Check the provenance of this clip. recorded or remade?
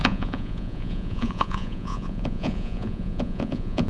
remade